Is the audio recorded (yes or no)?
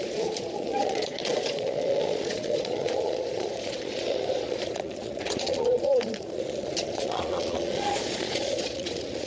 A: no